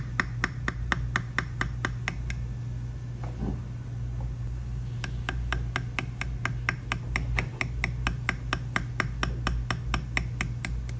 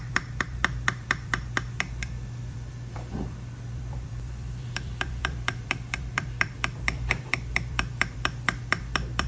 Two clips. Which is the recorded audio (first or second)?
first